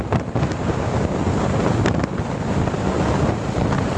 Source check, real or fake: real